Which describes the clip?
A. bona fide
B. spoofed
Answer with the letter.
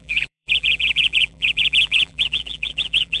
B